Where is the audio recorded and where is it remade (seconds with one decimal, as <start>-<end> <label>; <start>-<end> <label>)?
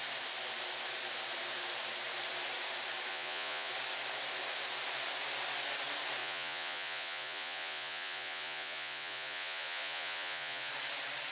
0.0-3.1 recorded; 3.1-3.7 remade; 3.7-6.2 recorded; 6.2-10.7 remade; 10.7-11.3 recorded